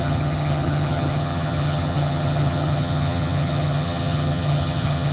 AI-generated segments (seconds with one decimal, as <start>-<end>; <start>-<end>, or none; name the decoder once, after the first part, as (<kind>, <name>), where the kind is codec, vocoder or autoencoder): 0.0-5.1 (vocoder, HiFi-GAN)